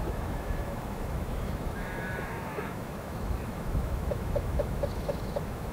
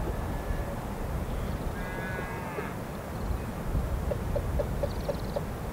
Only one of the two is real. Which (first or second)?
second